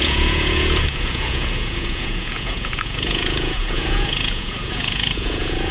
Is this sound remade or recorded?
remade